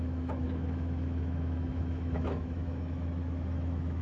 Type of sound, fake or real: fake